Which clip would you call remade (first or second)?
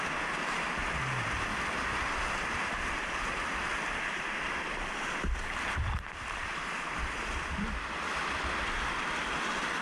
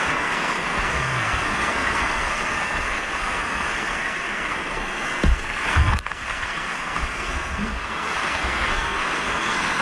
second